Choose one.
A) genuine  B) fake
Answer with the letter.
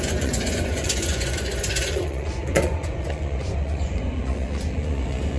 B